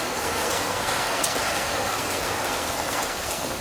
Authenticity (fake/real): fake